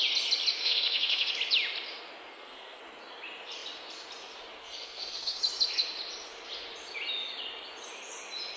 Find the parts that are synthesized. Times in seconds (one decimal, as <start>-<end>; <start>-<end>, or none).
0.6-1.3; 2.3-2.8; 4.6-5.4